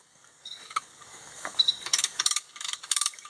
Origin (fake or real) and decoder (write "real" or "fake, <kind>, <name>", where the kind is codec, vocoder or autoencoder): fake, codec, DAC